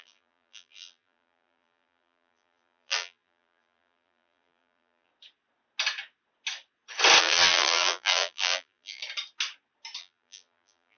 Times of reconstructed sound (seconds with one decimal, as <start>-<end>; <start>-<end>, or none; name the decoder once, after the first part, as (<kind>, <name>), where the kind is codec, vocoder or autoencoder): 0.0-5.1 (vocoder, BigVGAN v2); 7.2-9.0; 10.0-11.0